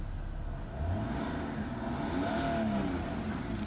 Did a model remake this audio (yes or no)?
no